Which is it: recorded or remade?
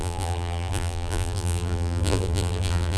remade